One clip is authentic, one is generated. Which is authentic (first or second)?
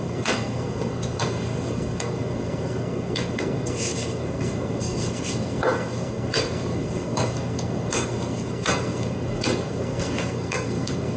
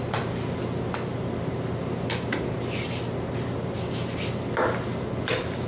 second